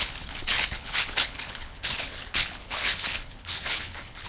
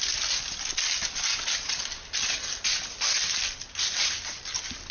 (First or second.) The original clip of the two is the second